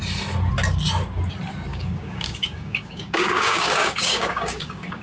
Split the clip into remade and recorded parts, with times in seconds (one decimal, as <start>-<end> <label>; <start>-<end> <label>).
0.0-1.7 recorded; 1.7-5.0 remade